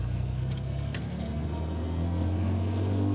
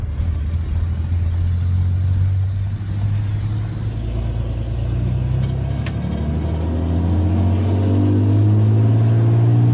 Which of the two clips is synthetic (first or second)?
first